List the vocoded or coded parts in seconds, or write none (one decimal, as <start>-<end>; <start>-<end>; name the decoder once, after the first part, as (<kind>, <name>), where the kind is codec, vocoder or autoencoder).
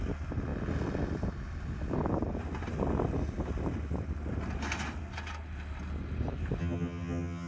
6.6-7.5 (vocoder, HiFi-GAN)